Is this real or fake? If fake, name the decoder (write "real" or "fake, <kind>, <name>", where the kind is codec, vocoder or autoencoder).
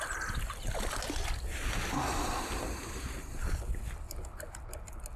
real